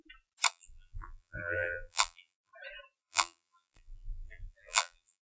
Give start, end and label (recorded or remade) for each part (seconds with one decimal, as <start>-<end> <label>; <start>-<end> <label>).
0.0-0.5 recorded; 0.5-2.5 remade; 2.5-3.0 recorded; 3.0-5.3 remade

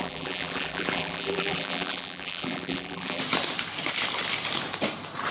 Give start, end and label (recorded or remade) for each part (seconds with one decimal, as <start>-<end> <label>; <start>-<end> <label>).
0.0-3.2 remade; 3.2-5.3 recorded

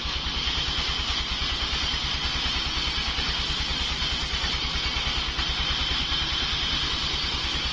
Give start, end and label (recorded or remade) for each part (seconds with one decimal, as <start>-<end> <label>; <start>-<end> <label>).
0.0-7.7 recorded

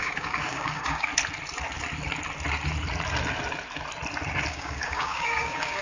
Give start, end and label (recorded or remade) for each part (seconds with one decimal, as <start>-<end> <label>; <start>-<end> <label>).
0.0-1.1 remade; 1.1-4.5 recorded; 4.5-5.8 remade

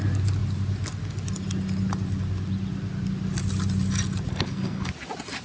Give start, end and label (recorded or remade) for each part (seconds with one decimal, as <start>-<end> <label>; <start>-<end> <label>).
0.0-4.3 recorded; 4.3-4.9 remade; 4.9-5.4 recorded

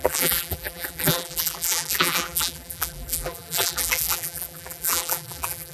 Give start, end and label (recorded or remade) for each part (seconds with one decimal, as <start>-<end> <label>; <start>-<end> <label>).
0.0-5.7 remade

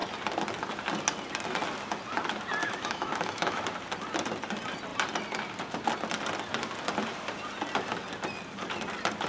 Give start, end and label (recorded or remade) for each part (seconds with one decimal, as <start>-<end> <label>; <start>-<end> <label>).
0.0-2.6 recorded; 2.6-3.6 remade; 3.6-9.3 recorded